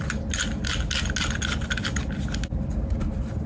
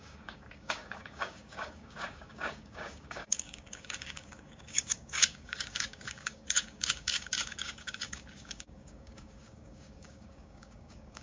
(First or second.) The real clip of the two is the first